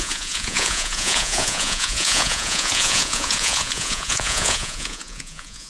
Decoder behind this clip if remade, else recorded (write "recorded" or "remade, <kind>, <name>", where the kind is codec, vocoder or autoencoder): remade, vocoder, Vocos